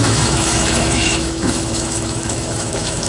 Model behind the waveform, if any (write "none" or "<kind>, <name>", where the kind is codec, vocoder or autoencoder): autoencoder, DAC-VAE